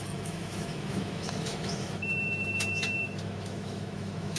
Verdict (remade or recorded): remade